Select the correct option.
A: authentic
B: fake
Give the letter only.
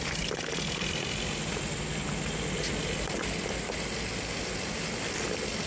A